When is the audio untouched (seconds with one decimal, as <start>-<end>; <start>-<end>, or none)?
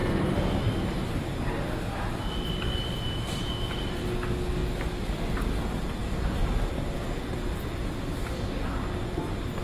0.0-9.6